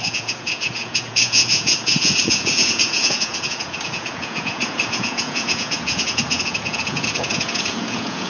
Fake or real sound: fake